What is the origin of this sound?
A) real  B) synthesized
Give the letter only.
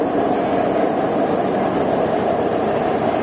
A